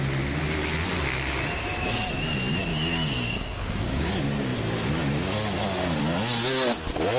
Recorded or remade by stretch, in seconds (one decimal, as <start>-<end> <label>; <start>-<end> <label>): 0.0-2.7 recorded; 2.7-4.1 remade; 4.1-7.2 recorded